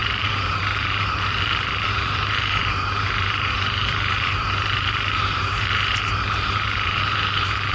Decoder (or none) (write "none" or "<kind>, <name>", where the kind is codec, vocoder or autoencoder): vocoder, BigVGAN v2